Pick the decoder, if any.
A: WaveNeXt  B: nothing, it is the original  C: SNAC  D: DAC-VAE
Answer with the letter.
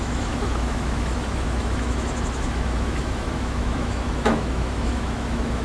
D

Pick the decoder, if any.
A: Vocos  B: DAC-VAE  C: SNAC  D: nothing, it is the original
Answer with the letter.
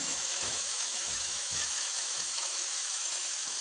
B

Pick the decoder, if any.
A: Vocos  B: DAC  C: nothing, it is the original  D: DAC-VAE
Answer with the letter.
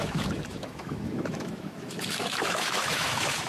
D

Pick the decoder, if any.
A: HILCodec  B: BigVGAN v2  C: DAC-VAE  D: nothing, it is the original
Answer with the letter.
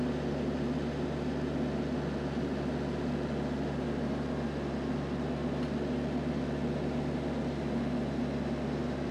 D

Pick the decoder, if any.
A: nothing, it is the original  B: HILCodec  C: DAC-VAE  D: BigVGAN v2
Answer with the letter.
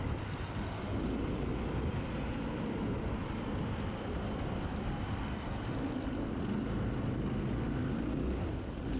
A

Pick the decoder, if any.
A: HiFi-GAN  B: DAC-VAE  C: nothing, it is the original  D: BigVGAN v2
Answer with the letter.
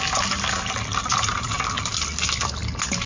C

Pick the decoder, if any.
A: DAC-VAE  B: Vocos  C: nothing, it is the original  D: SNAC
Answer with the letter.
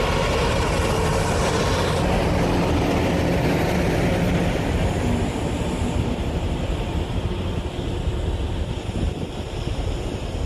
C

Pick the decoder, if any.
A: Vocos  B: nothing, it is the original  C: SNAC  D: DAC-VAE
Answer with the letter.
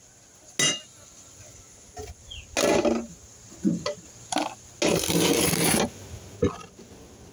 B